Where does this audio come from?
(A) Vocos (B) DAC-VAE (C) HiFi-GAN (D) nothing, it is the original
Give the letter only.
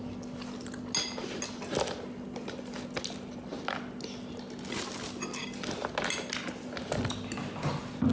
D